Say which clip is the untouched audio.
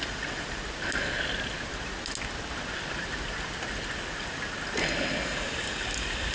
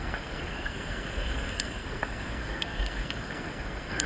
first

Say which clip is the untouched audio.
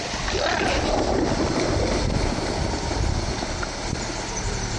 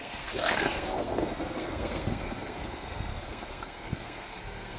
first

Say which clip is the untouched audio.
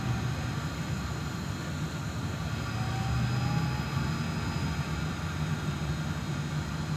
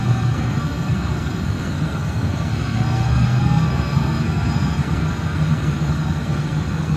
first